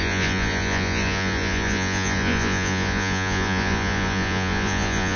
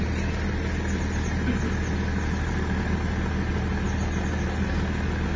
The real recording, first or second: second